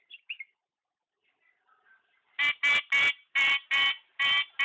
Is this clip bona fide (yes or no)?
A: yes